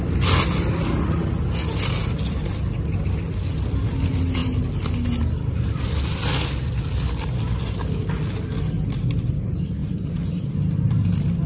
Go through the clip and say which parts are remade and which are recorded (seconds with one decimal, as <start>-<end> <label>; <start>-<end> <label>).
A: 0.0-9.8 recorded; 9.8-10.5 remade; 10.5-11.5 recorded